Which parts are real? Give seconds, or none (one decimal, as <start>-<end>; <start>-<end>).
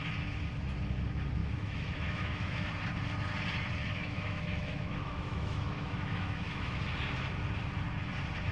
0.0-1.4; 2.7-3.8; 6.8-8.5